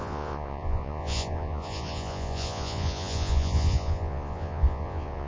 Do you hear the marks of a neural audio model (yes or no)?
yes